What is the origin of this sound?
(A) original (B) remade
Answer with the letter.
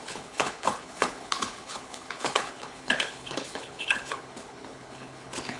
B